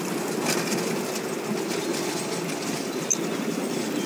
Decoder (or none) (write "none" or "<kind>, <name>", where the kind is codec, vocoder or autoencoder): none